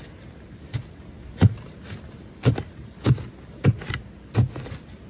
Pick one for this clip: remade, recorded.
recorded